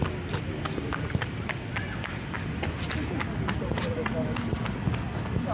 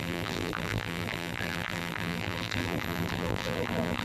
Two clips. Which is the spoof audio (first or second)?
second